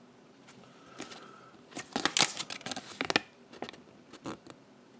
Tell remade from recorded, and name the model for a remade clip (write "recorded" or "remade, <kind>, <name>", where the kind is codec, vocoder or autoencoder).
recorded